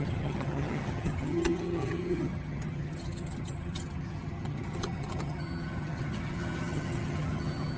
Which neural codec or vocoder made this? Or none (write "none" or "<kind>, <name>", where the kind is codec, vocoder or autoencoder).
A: vocoder, HiFi-GAN